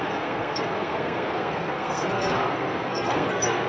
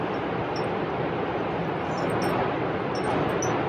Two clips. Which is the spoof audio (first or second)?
first